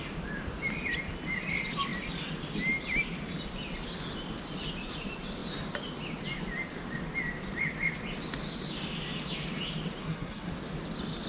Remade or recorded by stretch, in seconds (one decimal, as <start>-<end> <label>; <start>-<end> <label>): 0.0-10.0 recorded; 10.0-10.5 remade; 10.5-11.3 recorded